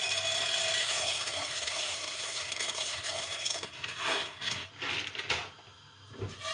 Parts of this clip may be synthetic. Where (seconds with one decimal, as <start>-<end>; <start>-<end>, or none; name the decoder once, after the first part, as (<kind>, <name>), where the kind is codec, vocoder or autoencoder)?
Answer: 0.8-4.7 (codec, SNAC)